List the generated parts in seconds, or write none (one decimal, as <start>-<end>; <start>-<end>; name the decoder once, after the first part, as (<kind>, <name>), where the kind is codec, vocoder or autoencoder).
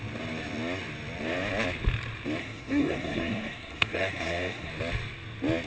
2.4-4.7 (codec, SNAC)